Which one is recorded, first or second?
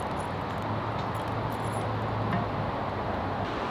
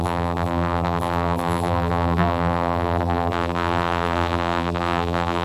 first